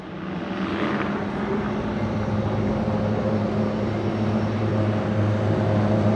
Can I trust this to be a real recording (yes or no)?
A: yes